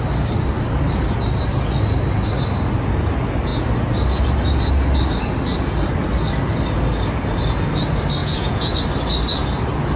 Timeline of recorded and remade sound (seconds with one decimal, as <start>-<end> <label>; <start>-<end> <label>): 0.0-8.2 recorded; 8.2-8.7 remade; 8.7-10.0 recorded